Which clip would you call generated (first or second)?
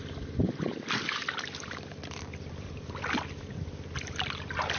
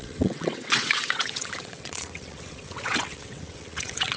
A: second